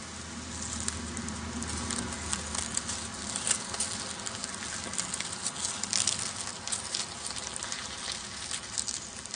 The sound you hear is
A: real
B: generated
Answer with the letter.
A